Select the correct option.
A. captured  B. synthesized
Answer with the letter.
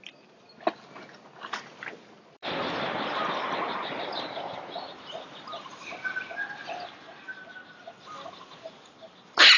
A